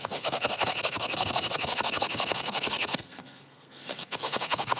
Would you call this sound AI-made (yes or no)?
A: yes